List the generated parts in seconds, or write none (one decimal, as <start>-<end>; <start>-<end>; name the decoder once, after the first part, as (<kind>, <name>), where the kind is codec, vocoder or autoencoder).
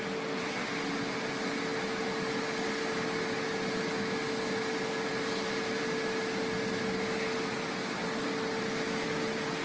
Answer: none